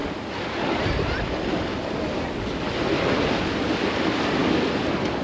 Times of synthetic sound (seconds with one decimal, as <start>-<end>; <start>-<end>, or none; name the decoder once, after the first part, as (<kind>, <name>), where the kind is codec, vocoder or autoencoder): none